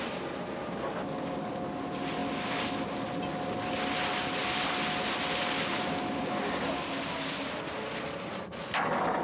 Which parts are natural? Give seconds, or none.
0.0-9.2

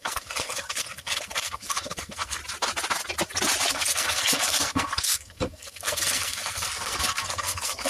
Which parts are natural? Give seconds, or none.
2.4-3.7

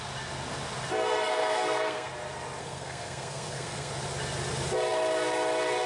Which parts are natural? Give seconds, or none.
0.0-0.9; 2.1-2.6; 3.9-5.9

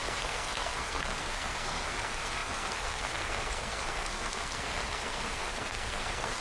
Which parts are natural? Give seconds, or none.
none